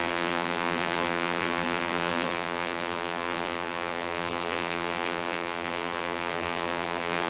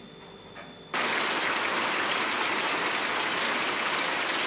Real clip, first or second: second